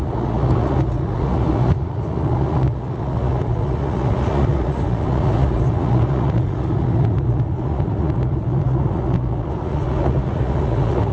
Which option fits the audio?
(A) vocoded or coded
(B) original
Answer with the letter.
A